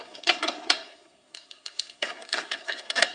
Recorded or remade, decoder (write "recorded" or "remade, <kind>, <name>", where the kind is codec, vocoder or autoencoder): remade, codec, SNAC